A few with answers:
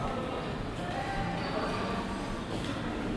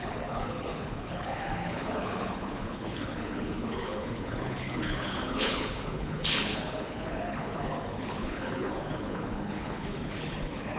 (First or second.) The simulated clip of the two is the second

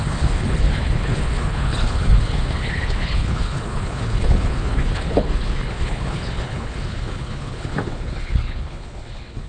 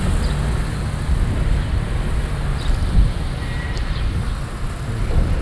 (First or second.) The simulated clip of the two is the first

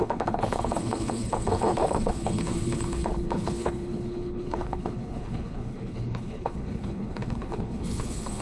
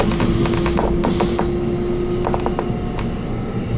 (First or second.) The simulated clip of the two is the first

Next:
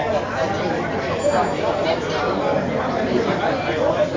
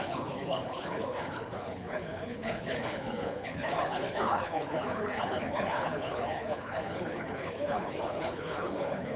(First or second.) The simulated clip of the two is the second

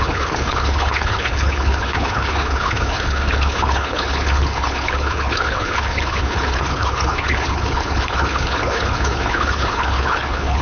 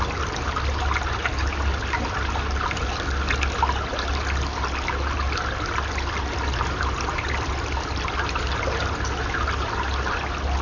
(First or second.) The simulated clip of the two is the first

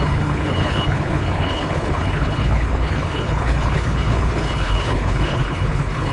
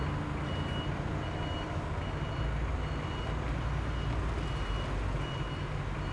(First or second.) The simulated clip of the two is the first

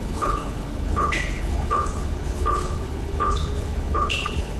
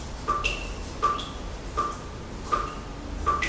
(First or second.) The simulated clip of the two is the first